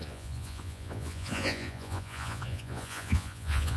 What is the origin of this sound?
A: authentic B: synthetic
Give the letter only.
B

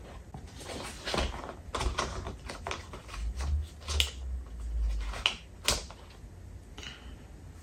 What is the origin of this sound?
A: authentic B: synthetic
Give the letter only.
A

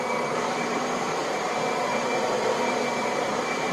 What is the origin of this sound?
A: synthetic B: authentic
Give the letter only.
A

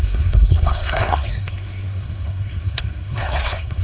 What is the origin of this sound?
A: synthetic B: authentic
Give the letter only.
A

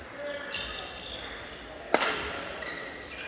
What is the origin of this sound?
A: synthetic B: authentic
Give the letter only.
B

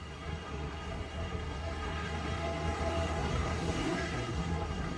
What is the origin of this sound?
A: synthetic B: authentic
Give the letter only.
A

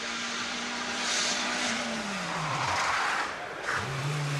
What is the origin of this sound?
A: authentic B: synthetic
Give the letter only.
A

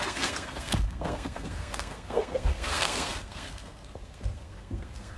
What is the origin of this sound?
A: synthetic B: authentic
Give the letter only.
A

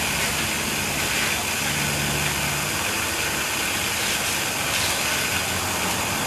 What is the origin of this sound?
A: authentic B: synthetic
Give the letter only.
A